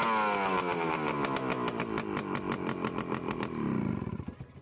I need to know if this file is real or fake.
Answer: real